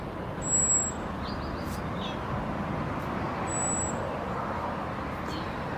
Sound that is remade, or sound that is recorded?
recorded